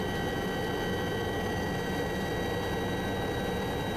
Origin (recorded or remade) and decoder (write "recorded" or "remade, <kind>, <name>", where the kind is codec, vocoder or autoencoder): recorded